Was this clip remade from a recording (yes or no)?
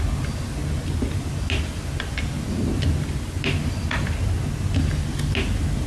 no